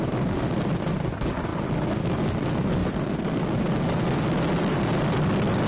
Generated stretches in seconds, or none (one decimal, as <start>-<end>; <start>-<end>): none